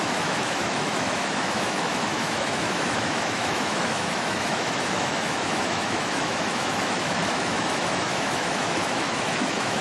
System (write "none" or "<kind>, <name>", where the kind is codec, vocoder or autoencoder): autoencoder, DAC-VAE